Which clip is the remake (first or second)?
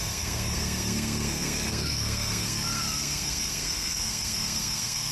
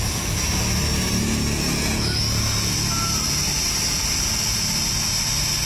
first